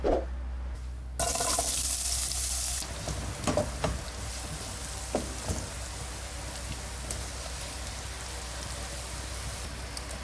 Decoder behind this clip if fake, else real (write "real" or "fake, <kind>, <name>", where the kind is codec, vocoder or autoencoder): real